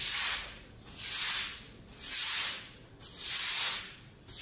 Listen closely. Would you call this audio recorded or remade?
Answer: recorded